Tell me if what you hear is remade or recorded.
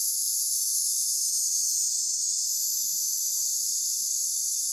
remade